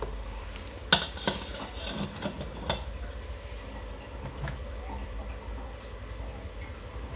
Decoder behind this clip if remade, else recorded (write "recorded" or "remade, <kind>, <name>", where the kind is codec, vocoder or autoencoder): recorded